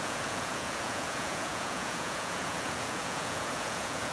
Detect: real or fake fake